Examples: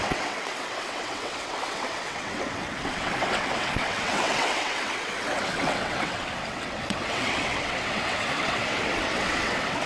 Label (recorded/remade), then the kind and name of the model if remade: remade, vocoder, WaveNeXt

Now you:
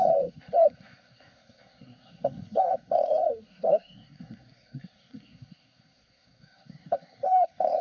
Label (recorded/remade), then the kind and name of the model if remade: remade, codec, SNAC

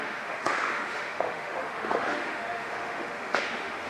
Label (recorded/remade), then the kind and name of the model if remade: remade, autoencoder, DAC-VAE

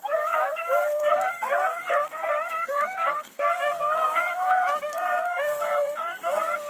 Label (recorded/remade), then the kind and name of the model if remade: remade, codec, SNAC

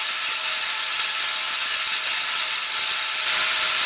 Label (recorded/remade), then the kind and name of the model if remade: recorded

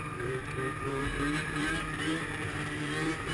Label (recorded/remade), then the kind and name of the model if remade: remade, vocoder, BigVGAN v2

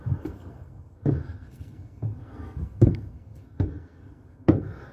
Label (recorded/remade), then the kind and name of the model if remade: remade, codec, SNAC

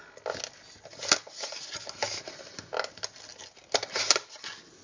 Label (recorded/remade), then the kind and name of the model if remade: recorded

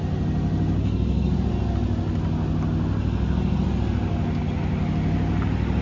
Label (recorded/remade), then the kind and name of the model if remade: recorded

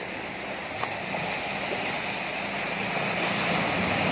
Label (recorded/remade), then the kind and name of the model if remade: recorded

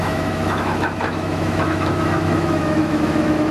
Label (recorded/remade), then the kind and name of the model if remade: remade, autoencoder, DAC-VAE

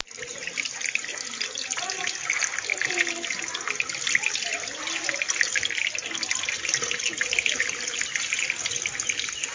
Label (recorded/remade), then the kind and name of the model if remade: recorded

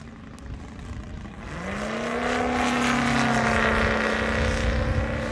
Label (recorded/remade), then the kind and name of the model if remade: recorded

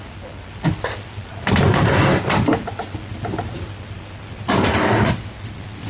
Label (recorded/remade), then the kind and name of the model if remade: recorded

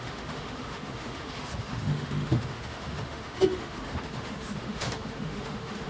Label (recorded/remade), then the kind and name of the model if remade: remade, autoencoder, DAC-VAE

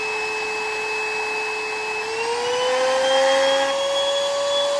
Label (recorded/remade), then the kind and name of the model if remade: recorded